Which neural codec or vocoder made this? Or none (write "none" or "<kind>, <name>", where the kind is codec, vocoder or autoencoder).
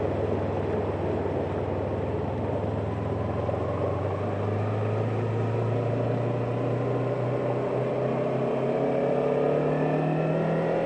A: none